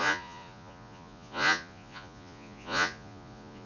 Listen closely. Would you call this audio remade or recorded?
remade